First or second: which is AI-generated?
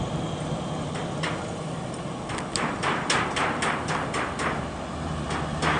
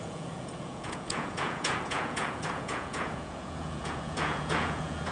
second